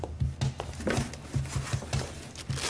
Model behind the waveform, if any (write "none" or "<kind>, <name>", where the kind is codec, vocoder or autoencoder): none